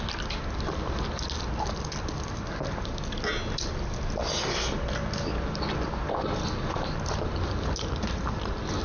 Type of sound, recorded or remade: recorded